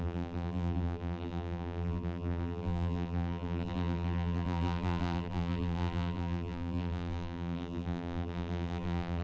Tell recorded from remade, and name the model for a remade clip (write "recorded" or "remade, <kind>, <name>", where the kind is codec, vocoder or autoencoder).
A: remade, vocoder, BigVGAN v2